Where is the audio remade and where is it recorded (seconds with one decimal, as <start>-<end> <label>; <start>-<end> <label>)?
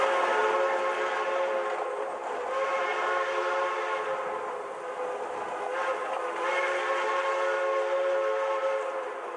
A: 0.0-9.4 recorded